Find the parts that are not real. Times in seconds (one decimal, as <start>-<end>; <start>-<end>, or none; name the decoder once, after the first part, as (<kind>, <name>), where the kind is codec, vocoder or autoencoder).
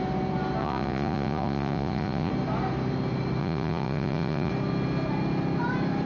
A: 0.6-2.3 (vocoder, Vocos); 3.4-4.5